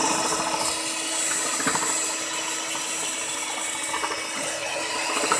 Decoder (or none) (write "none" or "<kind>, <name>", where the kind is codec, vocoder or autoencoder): none